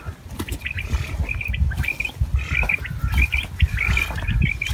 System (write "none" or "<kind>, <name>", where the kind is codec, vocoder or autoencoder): none